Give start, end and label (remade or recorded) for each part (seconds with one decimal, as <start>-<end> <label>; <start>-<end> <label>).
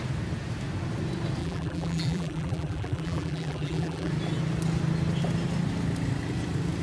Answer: 0.0-1.4 recorded; 1.4-4.1 remade; 4.1-6.8 recorded